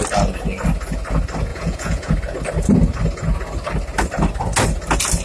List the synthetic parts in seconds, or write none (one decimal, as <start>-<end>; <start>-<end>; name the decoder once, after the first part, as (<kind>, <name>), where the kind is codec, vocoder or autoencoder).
1.5-2.1 (vocoder, Vocos)